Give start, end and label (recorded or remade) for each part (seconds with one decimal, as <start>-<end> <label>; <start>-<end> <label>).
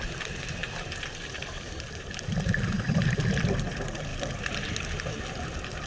0.0-0.6 recorded; 0.6-3.0 remade; 3.0-5.9 recorded